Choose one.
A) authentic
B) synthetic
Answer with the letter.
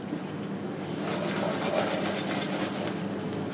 A